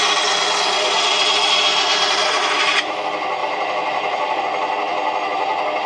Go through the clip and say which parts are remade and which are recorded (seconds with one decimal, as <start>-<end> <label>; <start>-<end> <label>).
0.0-1.7 recorded; 1.7-3.0 remade; 3.0-3.4 recorded; 3.4-4.4 remade; 4.4-5.9 recorded

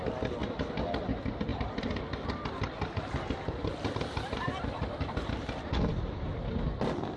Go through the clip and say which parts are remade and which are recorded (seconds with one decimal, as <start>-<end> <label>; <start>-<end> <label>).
0.0-1.5 recorded; 1.5-3.9 remade; 3.9-7.2 recorded

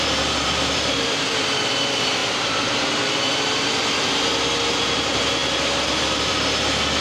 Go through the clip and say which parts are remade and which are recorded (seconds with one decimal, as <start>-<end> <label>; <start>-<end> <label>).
0.0-5.4 remade; 5.4-6.3 recorded; 6.3-7.0 remade